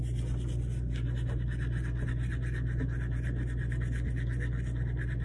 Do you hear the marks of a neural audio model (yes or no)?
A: no